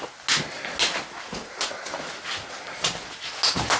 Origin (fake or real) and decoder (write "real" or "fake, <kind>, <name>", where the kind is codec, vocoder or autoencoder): real